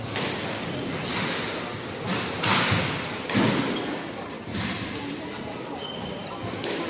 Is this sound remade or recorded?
recorded